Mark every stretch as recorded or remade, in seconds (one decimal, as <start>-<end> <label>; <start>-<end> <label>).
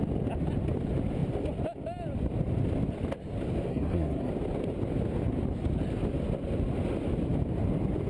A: 0.0-3.7 recorded; 3.7-4.3 remade; 4.3-8.1 recorded